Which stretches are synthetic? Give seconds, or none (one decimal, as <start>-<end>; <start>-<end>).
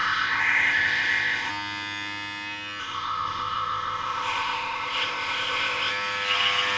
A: 0.0-1.5; 2.8-5.9